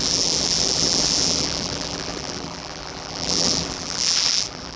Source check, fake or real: fake